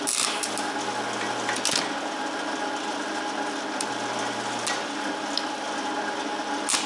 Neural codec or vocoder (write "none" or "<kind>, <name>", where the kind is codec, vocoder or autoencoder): none